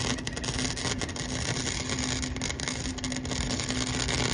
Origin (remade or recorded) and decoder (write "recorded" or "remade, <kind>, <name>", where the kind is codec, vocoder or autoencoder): recorded